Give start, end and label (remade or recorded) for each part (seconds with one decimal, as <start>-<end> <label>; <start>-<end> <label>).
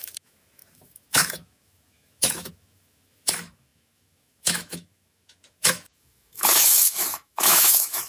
0.0-8.1 remade